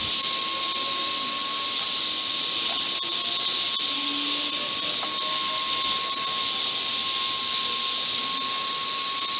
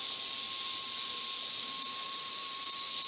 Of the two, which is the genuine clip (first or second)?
first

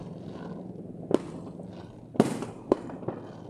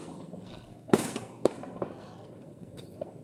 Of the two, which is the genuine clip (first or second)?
first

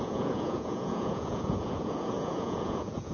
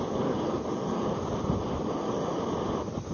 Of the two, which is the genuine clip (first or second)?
second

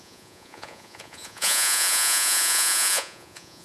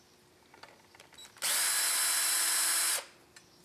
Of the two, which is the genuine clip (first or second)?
second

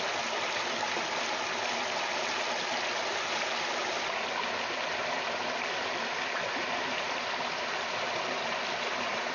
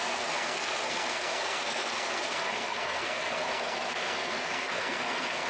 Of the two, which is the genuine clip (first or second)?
first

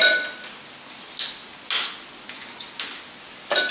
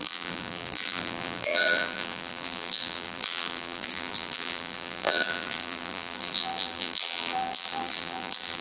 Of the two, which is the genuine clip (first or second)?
first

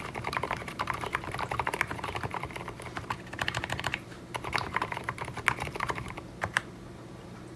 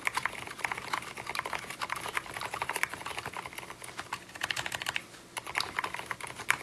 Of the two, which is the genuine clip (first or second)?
second